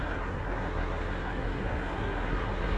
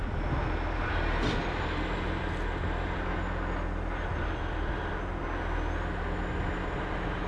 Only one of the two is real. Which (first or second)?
second